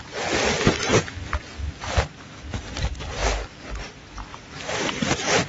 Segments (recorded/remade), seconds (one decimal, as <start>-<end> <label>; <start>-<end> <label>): 0.0-4.3 recorded; 4.3-4.9 remade; 4.9-5.5 recorded